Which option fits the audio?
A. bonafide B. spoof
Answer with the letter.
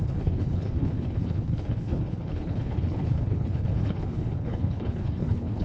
B